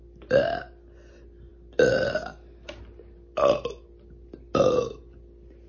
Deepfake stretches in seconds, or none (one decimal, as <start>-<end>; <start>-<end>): none